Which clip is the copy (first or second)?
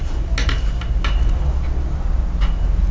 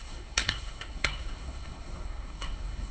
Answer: second